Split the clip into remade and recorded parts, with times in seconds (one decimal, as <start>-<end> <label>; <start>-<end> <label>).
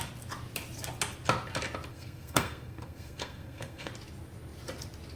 0.0-1.9 recorded; 1.9-3.9 remade; 3.9-5.2 recorded